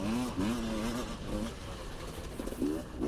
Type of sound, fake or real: real